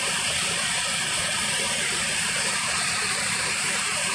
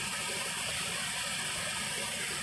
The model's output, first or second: first